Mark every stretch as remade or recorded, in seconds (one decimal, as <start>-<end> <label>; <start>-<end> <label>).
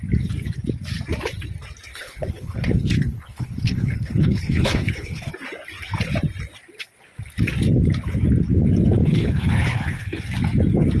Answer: 0.0-1.9 recorded; 1.9-5.3 remade; 5.3-9.0 recorded; 9.0-10.2 remade; 10.2-11.0 recorded